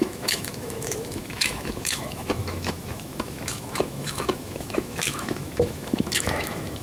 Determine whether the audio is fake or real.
fake